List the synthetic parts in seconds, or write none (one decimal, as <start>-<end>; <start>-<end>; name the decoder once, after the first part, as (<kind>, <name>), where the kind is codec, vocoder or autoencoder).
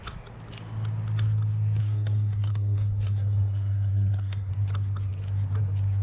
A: 1.8-4.5 (codec, SNAC)